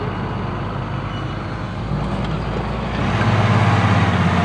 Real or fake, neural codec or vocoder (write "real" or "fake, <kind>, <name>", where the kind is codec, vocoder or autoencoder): real